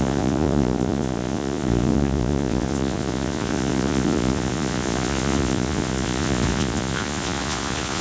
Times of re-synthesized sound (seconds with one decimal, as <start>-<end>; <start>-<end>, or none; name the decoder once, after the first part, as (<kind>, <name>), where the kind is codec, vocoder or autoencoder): 0.0-8.0 (vocoder, Vocos)